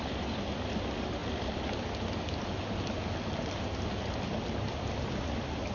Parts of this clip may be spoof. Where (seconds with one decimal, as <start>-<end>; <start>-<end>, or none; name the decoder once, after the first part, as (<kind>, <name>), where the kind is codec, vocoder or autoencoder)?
none